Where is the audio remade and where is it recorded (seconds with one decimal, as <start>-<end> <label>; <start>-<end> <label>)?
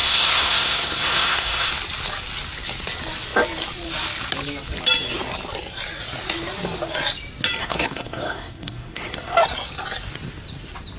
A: 0.0-1.7 remade; 1.7-7.6 recorded; 7.6-9.1 remade; 9.1-11.0 recorded